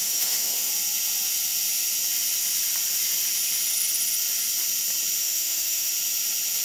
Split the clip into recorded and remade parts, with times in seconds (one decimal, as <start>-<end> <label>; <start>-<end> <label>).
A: 0.0-0.7 remade; 0.7-5.2 recorded; 5.2-5.9 remade; 5.9-6.6 recorded